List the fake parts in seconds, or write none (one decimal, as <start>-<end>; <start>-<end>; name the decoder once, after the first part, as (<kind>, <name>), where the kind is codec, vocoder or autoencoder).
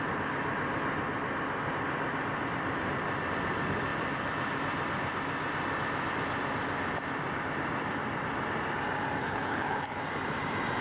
9.2-10.0 (codec, HILCodec)